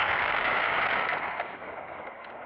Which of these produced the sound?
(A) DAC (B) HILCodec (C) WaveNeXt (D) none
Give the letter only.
A